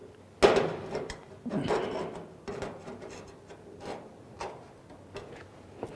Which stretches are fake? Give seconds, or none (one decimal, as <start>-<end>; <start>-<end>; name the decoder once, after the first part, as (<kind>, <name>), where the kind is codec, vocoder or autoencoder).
none